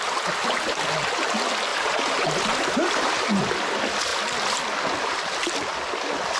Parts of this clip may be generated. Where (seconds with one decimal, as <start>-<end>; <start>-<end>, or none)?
1.7-3.4